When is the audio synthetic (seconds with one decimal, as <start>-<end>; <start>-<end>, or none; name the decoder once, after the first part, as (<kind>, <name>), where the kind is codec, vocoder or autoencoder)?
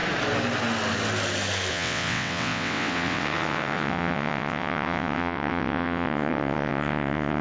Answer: 1.7-7.4 (vocoder, WaveNeXt)